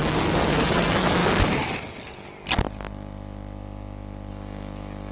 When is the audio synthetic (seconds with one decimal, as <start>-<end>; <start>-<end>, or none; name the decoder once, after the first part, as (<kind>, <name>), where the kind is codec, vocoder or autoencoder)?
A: 0.0-1.2 (autoencoder, DAC-VAE); 4.3-5.1